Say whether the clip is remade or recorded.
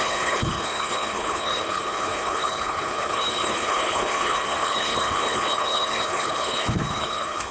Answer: remade